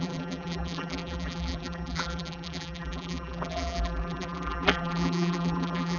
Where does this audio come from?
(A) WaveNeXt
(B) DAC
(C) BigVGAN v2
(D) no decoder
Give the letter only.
C